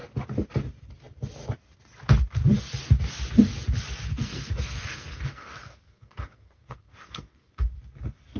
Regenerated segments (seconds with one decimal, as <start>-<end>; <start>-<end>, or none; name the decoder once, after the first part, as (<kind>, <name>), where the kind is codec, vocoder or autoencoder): 4.1-7.5 (codec, SNAC)